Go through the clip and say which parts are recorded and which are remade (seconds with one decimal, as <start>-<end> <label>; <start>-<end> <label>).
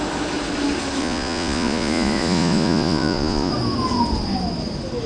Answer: 0.0-1.0 recorded; 1.0-3.5 remade; 3.5-5.1 recorded